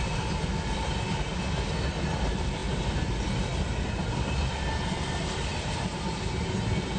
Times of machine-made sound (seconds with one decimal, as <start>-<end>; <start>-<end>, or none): none